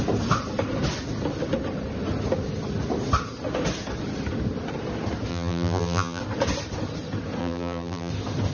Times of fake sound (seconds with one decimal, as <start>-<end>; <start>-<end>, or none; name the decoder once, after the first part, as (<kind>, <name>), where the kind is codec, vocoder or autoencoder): 5.3-6.2 (vocoder, BigVGAN v2); 7.4-8.1